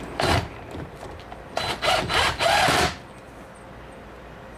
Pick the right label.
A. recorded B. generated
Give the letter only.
A